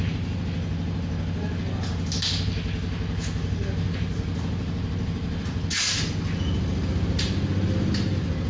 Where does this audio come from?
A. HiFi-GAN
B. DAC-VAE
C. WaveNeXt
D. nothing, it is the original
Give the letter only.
D